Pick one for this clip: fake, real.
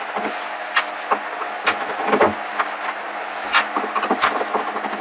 real